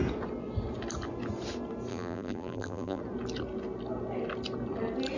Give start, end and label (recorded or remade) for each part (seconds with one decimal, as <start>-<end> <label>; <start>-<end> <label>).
0.0-1.9 recorded; 1.9-3.0 remade; 3.0-5.2 recorded

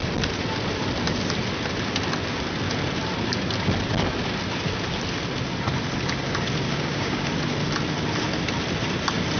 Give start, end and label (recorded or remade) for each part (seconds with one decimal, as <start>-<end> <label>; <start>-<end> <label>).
0.0-6.7 recorded; 6.7-7.3 remade; 7.3-9.4 recorded

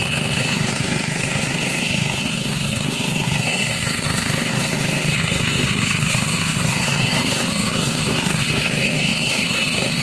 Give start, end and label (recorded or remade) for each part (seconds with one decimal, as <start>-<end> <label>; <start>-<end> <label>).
0.0-10.0 remade

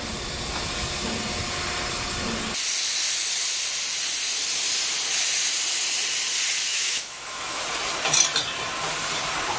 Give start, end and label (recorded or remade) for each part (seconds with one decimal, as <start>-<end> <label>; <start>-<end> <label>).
0.0-6.7 recorded; 6.7-7.6 remade; 7.6-9.6 recorded